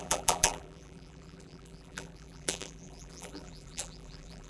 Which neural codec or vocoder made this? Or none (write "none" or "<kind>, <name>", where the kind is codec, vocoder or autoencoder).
vocoder, BigVGAN v2